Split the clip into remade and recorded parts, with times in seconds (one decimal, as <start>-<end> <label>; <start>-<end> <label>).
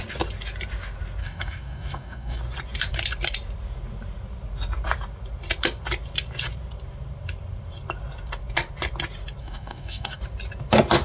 0.0-1.2 recorded; 1.2-2.4 remade; 2.4-9.4 recorded; 9.4-10.2 remade; 10.2-11.0 recorded